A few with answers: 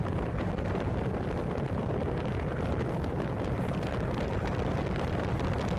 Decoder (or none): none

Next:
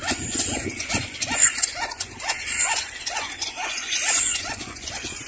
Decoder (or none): vocoder, Vocos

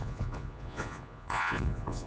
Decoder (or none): vocoder, Vocos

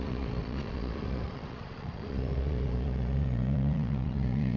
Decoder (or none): vocoder, Vocos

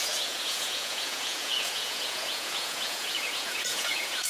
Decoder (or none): vocoder, Vocos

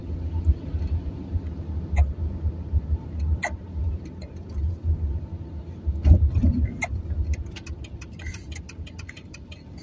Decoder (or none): none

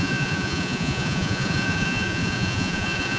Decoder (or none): vocoder, Vocos